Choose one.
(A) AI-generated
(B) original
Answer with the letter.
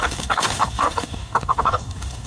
A